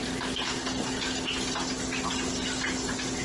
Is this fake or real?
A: real